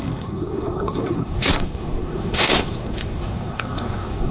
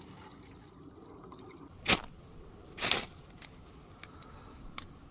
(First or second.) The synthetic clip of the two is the first